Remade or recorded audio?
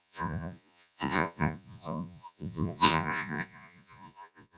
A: remade